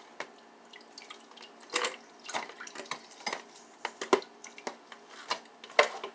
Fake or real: real